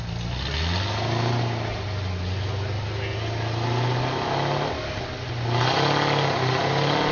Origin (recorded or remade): recorded